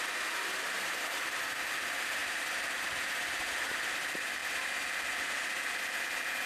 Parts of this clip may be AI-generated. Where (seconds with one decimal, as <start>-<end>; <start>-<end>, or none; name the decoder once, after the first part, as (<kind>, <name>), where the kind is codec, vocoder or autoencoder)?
2.2-3.5 (vocoder, BigVGAN v2)